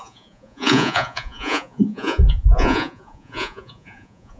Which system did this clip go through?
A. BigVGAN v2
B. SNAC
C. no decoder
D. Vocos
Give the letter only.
D